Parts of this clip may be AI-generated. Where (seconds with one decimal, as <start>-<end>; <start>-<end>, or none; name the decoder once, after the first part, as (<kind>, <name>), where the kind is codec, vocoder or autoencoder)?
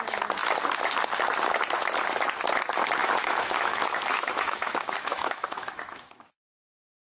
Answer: 3.0-6.3 (autoencoder, DAC-VAE)